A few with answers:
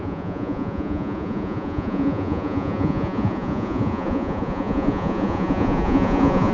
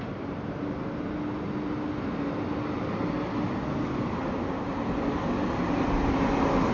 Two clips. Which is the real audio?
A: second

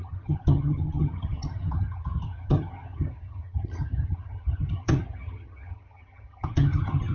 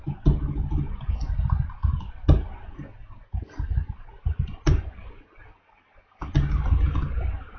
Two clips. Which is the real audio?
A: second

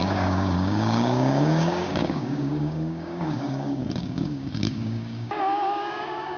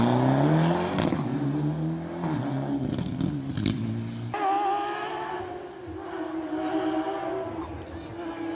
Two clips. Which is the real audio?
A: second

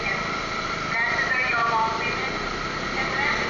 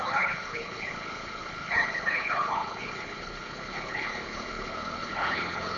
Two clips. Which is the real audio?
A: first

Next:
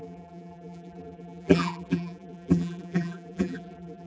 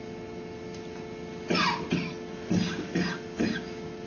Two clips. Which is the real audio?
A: second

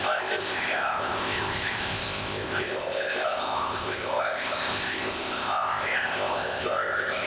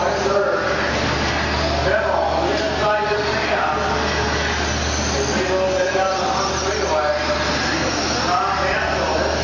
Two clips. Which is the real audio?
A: second